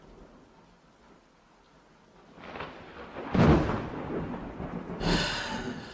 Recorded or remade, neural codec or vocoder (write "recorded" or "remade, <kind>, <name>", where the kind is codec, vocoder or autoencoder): recorded